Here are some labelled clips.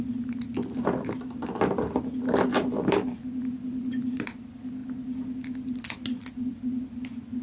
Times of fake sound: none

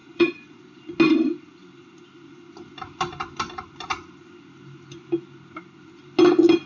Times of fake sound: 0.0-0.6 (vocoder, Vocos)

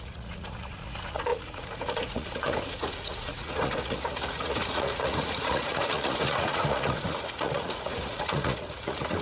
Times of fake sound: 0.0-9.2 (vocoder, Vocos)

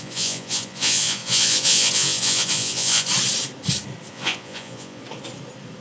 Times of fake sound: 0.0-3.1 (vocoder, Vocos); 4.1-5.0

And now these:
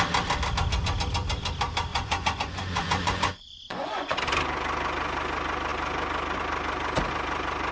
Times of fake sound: 1.9-4.2 (vocoder, Vocos)